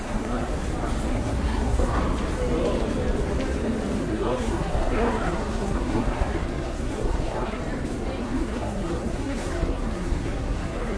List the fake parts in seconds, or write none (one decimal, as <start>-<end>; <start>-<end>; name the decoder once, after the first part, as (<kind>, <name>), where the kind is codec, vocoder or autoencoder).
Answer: 0.0-0.5 (codec, SNAC); 1.1-2.0; 4.0-7.6; 8.2-11.0